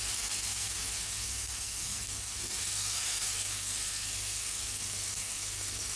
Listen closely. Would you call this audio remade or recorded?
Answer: remade